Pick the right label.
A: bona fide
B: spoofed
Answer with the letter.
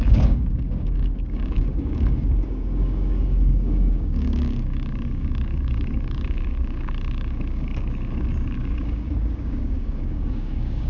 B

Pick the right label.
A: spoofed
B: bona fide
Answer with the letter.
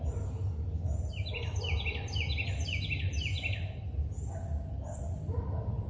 B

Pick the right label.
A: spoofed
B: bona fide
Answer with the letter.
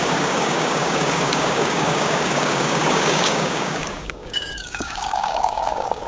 A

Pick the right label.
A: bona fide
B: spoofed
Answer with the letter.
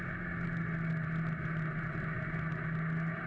A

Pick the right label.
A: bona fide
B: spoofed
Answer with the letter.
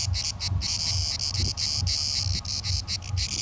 A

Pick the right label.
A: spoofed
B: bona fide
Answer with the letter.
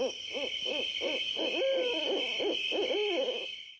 B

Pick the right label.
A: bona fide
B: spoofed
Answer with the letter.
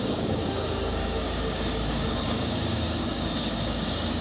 B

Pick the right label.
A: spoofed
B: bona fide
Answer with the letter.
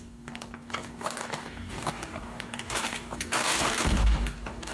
A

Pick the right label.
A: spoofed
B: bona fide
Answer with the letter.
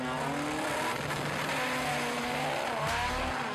B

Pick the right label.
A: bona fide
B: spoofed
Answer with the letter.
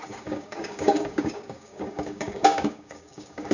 B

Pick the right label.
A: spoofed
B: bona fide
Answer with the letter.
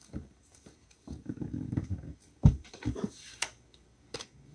A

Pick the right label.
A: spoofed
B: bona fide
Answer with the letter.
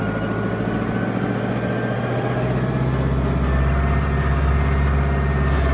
B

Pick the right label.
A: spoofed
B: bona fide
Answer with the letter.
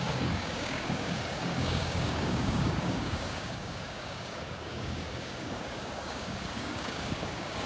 A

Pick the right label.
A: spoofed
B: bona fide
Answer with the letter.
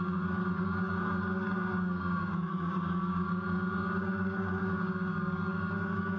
A